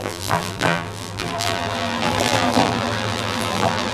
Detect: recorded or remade remade